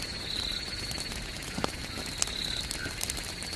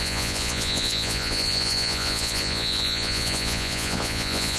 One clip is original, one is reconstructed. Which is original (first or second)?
first